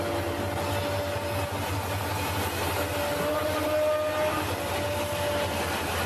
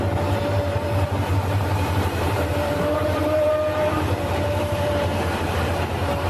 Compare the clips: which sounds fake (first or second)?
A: second